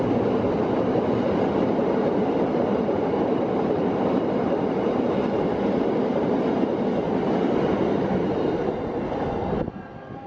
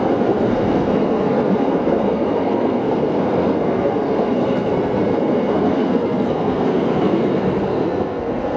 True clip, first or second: first